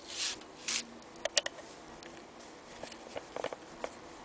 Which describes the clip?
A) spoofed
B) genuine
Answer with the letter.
B